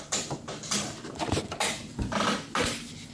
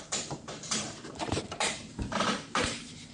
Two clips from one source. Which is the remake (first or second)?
second